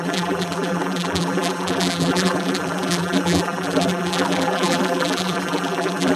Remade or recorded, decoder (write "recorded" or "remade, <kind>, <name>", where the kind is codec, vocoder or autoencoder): remade, vocoder, BigVGAN v2